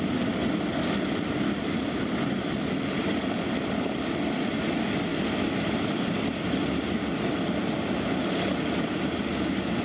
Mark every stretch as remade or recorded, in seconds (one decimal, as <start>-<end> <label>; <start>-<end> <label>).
0.0-9.8 recorded